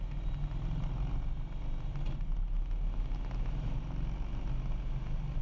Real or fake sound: real